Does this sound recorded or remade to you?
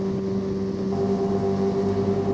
recorded